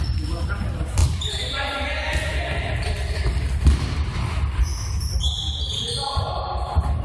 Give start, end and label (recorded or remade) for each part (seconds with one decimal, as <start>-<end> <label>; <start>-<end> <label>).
0.0-1.0 recorded; 1.0-1.8 remade; 1.8-2.3 recorded; 2.3-4.2 remade; 4.2-7.0 recorded

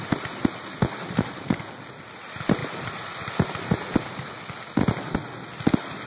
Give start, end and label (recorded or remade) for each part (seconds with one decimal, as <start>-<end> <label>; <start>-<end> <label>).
0.0-1.0 recorded; 1.0-1.6 remade; 1.6-2.6 recorded; 2.6-4.1 remade; 4.1-6.1 recorded

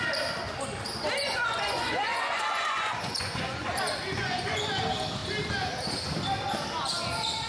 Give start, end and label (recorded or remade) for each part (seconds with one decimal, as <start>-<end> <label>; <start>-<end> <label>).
0.0-1.2 recorded; 1.2-3.7 remade; 3.7-4.2 recorded; 4.2-4.7 remade; 4.7-7.5 recorded

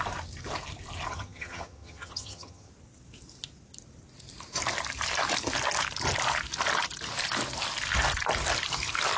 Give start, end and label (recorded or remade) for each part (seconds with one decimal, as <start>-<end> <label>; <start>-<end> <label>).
0.0-1.1 recorded; 1.1-2.7 remade; 2.7-9.2 recorded

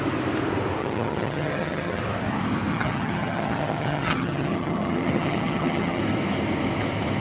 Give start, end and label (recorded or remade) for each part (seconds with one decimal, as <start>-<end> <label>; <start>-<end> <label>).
0.0-0.8 recorded; 0.8-2.0 remade; 2.0-2.7 recorded; 2.7-6.0 remade; 6.0-7.2 recorded

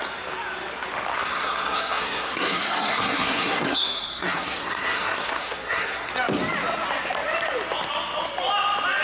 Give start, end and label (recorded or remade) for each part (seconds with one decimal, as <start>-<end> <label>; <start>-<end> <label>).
0.0-1.1 recorded; 1.1-6.1 remade; 6.1-9.0 recorded